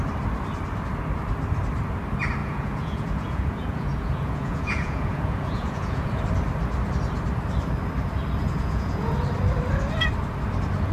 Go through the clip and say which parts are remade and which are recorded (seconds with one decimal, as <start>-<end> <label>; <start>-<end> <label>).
0.0-2.4 recorded; 2.4-6.2 remade; 6.2-8.4 recorded; 8.4-9.1 remade; 9.1-10.9 recorded